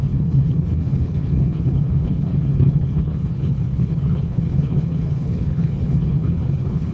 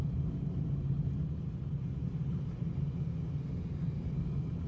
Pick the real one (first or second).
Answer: second